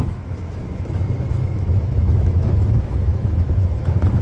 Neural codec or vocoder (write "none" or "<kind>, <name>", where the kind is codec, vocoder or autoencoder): autoencoder, DAC-VAE